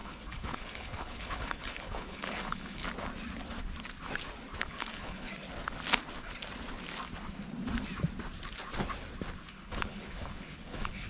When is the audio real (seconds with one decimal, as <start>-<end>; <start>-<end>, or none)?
2.8-4.6; 5.3-9.5